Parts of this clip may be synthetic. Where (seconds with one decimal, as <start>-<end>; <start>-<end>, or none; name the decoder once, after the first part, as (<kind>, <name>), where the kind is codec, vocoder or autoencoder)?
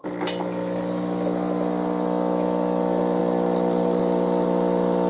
none